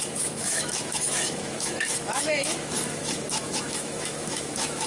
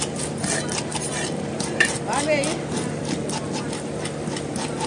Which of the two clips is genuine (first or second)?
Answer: second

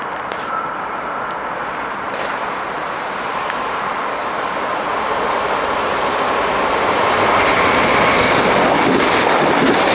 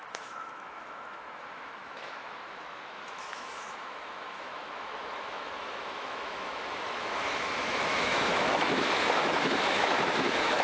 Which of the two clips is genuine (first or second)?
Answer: first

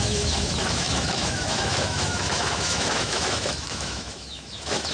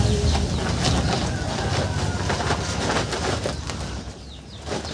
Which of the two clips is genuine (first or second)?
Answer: second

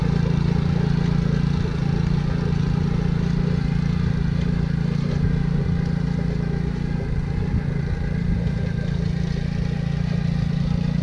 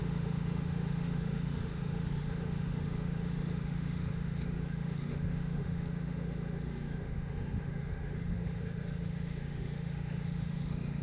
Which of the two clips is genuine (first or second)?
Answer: first